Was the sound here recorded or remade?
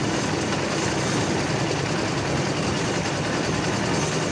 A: recorded